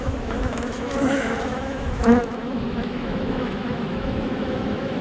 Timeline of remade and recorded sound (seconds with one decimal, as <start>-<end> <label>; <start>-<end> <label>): 0.0-5.0 remade